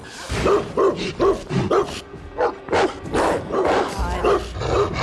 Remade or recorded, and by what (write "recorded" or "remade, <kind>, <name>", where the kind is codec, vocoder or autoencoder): recorded